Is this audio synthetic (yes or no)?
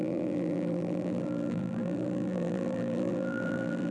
yes